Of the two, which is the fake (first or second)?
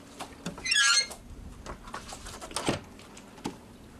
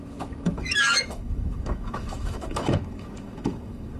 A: second